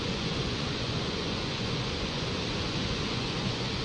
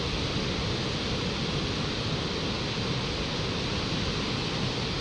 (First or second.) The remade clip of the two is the first